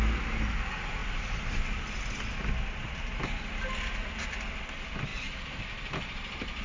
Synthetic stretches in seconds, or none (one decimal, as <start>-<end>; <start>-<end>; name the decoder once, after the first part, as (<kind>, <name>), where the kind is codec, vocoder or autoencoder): none